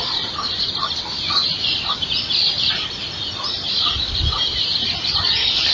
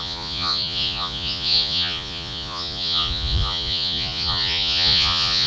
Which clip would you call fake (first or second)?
second